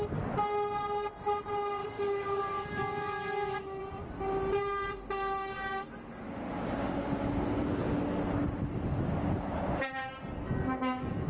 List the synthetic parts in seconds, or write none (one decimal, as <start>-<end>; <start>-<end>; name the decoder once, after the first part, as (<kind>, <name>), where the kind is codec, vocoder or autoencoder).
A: 1.8-3.8 (codec, DAC)